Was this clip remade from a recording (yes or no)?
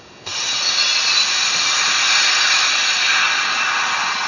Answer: no